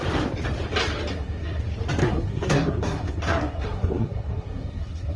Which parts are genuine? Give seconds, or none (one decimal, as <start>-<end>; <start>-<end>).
0.0-1.1; 1.6-2.0